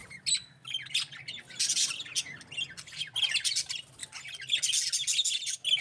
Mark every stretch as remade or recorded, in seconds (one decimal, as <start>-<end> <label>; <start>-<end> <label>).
0.0-5.8 recorded